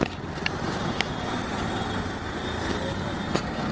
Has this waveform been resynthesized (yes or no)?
no